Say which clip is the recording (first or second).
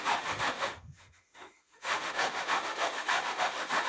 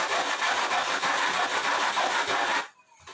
second